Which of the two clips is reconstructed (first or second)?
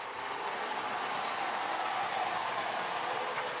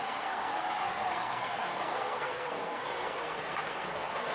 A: second